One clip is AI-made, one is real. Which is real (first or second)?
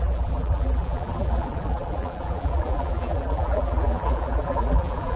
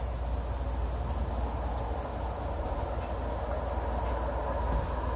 second